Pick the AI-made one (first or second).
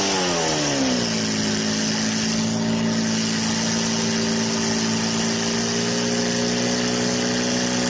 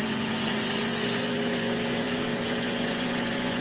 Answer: second